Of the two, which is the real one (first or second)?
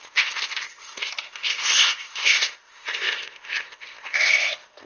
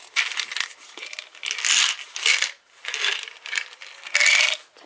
second